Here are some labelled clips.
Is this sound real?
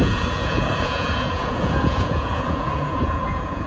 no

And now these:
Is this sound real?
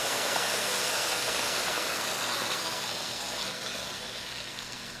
no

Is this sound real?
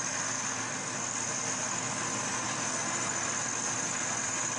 yes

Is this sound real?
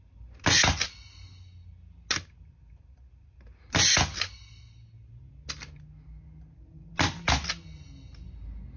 yes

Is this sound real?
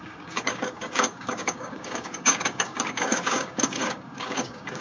no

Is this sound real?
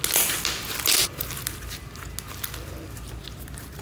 yes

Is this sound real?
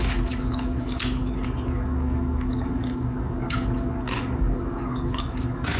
no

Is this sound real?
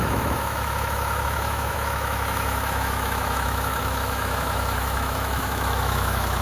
no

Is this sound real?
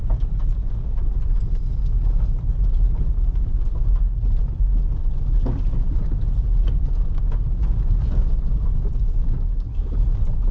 yes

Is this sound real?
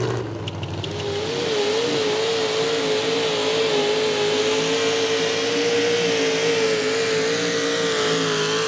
yes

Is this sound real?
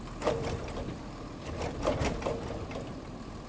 no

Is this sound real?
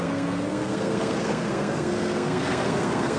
no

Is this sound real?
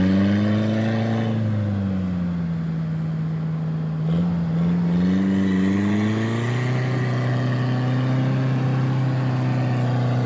yes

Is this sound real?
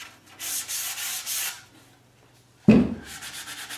yes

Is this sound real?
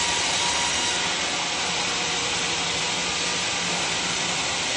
yes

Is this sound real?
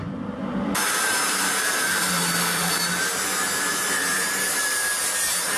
no